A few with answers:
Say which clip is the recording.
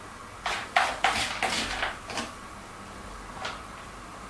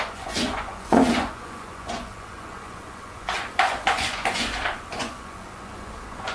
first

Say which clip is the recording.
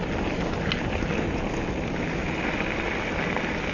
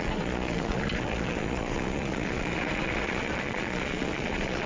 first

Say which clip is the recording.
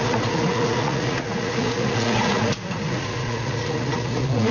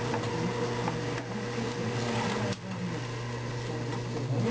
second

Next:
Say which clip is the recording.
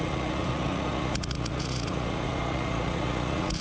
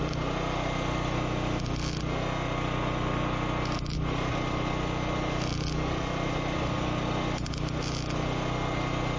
second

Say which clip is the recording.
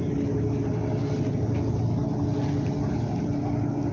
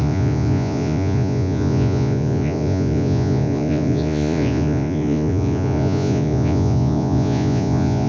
first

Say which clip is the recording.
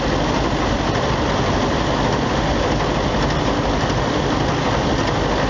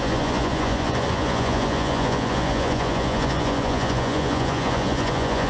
first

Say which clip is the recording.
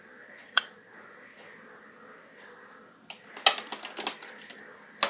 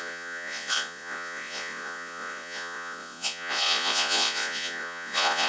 first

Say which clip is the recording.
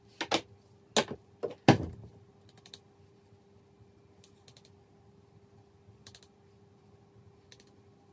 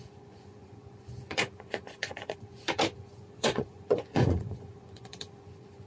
first